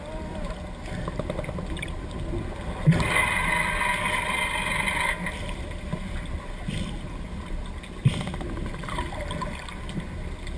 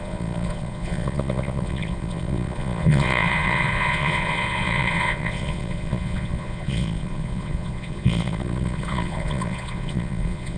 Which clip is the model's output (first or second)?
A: second